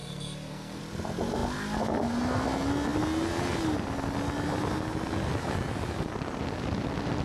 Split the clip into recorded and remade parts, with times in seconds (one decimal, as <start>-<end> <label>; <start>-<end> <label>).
0.0-0.8 remade; 0.8-7.2 recorded